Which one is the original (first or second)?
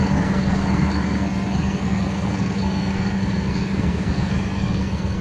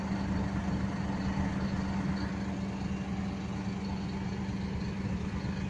second